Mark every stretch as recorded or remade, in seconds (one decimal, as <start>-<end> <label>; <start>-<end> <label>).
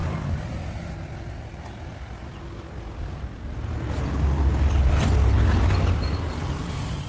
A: 0.0-7.1 recorded